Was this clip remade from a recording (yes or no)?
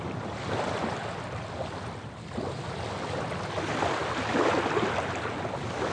no